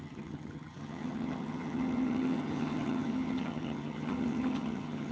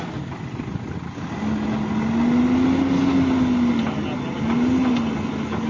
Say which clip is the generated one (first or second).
first